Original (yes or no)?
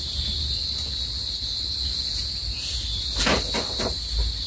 yes